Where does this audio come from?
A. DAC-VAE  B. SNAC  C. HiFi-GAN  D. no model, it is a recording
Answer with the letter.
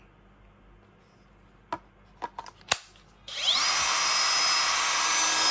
D